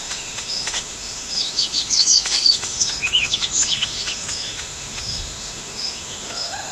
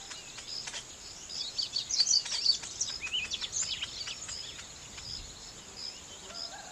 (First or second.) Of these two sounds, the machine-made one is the first